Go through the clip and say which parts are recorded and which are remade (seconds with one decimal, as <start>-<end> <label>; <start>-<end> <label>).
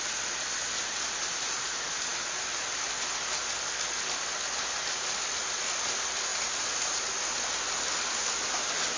0.0-9.0 recorded